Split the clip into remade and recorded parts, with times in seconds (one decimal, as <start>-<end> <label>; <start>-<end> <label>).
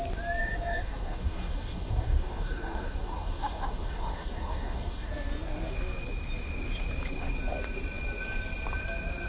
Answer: 0.0-0.4 recorded; 0.4-5.1 remade; 5.1-9.3 recorded